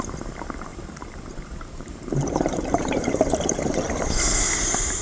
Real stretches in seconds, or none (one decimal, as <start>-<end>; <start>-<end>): 0.0-0.7; 3.7-5.0